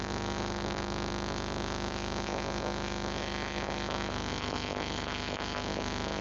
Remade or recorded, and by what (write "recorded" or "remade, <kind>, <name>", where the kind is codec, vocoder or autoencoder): remade, autoencoder, DAC-VAE